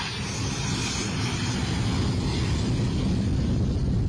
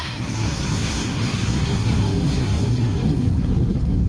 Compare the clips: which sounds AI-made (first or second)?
second